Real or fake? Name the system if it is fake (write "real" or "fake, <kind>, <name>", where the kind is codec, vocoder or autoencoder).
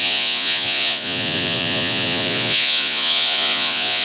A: fake, vocoder, Vocos